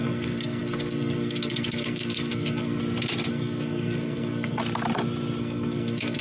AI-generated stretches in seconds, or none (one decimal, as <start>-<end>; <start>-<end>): 0.0-2.8; 3.3-4.6; 5.4-6.2